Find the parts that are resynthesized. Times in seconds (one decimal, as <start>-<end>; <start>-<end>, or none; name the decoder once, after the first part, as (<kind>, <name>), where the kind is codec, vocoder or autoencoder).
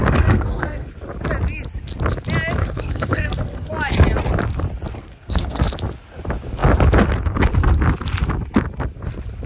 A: 0.0-0.9 (codec, SNAC); 2.6-3.7; 5.0-5.6